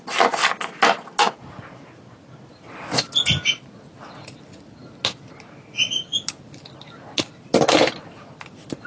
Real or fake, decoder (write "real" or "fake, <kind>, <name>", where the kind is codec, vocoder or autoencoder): real